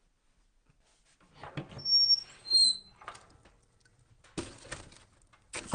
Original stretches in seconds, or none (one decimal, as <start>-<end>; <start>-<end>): 0.0-5.7